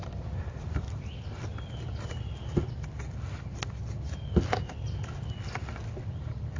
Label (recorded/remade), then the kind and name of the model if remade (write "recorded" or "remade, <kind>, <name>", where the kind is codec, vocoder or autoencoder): recorded